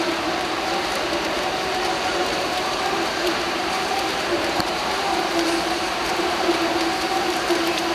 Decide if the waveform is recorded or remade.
remade